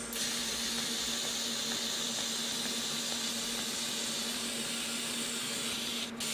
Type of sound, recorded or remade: recorded